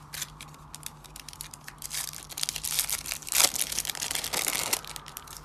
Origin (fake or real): real